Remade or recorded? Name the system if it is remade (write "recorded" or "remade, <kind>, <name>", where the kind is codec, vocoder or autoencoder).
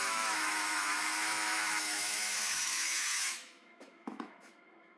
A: remade, autoencoder, DAC-VAE